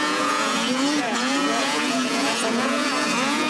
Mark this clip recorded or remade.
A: remade